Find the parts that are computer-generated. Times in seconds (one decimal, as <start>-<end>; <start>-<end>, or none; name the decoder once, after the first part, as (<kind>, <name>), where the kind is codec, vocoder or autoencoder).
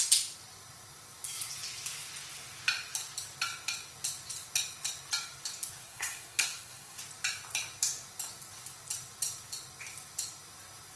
5.8-7.0 (codec, SNAC)